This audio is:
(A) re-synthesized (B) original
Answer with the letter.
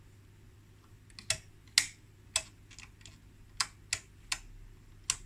B